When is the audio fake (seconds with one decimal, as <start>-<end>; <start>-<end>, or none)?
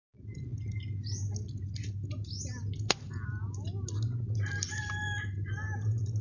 none